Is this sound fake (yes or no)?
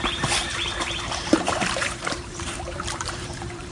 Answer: yes